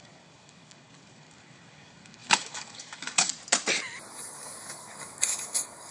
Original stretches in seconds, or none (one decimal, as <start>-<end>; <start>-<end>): 3.3-4.1